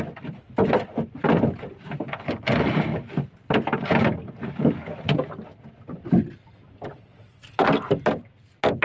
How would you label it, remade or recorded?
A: recorded